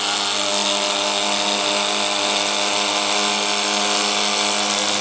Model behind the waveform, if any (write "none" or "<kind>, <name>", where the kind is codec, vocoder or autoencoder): none